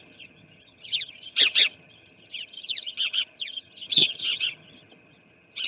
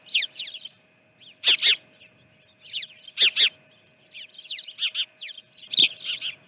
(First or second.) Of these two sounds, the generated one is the first